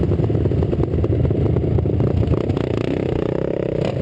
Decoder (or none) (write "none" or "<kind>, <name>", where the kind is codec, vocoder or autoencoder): none